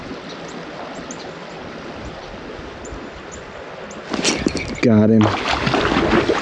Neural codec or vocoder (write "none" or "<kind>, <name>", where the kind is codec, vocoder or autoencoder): none